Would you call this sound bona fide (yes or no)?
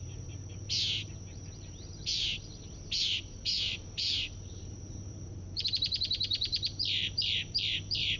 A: no